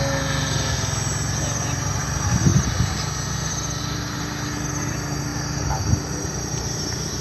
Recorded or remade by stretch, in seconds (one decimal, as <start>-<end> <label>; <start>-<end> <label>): 0.0-5.3 recorded; 5.3-6.6 remade; 6.6-7.2 recorded